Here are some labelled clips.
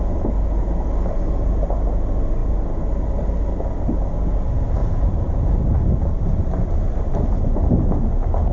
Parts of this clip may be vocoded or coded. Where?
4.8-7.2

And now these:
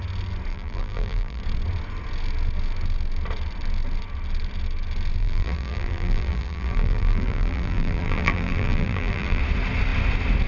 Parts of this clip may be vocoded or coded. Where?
0.5-1.4; 5.2-9.4

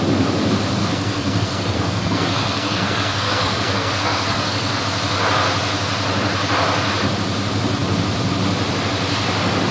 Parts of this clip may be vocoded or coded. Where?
0.8-4.8

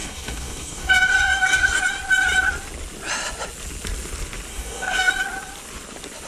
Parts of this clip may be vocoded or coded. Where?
0.0-1.8; 4.5-5.1

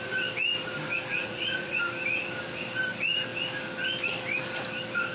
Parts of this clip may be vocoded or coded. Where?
1.1-1.8